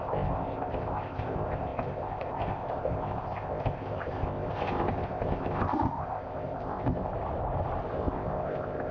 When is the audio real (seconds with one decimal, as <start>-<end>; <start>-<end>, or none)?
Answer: 7.1-7.9